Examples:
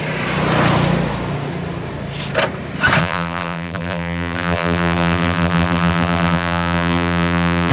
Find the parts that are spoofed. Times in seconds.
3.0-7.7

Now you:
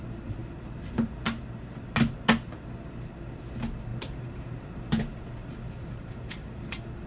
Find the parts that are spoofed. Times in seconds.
3.9-5.0; 5.4-7.1